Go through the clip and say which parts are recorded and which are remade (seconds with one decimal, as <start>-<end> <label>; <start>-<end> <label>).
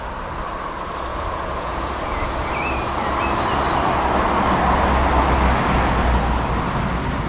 0.0-1.1 recorded; 1.1-2.5 remade; 2.5-7.3 recorded